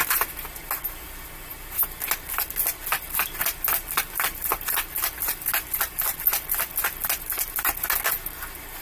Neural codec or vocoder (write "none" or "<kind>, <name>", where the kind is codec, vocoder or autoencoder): none